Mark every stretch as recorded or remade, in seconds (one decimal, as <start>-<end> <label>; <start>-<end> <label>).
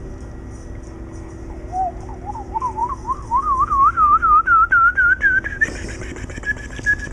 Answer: 0.0-7.1 recorded